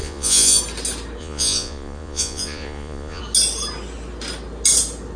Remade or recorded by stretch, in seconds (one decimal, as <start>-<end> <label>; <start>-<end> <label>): 0.0-0.6 remade; 0.6-1.2 recorded; 1.2-3.2 remade; 3.2-5.2 recorded